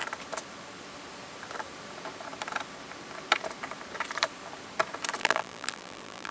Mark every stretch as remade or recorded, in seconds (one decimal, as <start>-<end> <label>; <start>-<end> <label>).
0.0-5.2 recorded; 5.2-6.3 remade